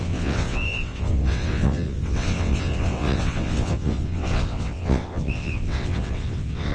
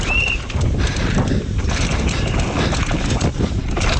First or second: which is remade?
first